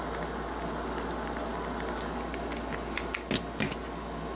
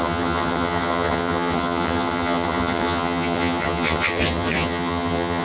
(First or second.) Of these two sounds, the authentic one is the first